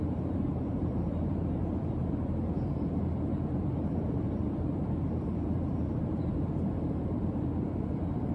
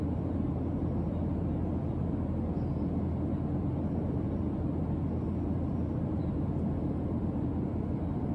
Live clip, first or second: second